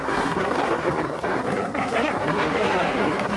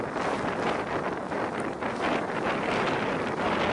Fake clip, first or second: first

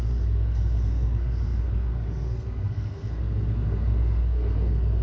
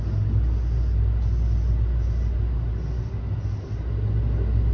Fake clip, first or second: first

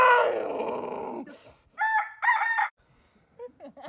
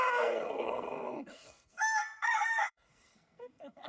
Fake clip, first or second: second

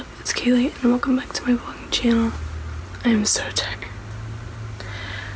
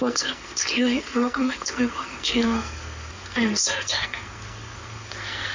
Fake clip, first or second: second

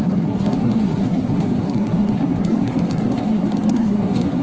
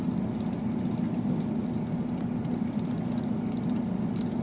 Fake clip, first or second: first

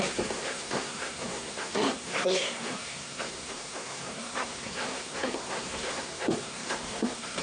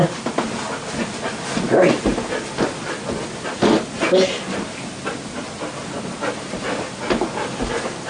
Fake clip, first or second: first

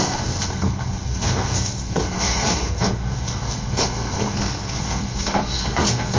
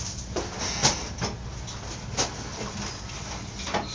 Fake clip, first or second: first